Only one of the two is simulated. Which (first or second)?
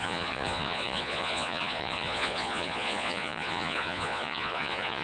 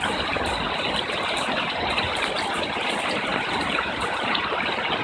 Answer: first